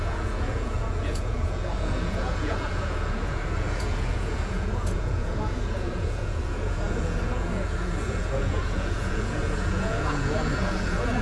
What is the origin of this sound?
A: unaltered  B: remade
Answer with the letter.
B